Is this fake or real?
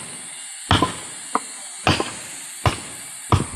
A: real